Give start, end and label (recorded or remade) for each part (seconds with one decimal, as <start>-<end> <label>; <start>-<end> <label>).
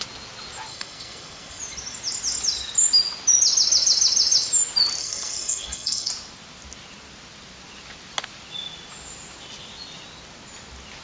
0.0-0.7 recorded; 0.7-1.6 remade; 1.6-5.0 recorded; 5.0-6.1 remade; 6.1-11.0 recorded